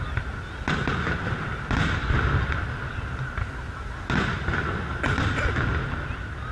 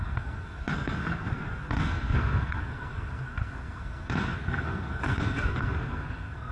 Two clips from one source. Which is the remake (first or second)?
second